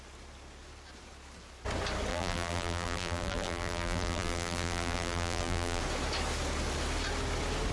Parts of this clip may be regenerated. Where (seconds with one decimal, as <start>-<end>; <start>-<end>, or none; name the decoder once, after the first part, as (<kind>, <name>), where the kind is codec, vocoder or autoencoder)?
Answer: 2.1-5.8 (vocoder, BigVGAN v2)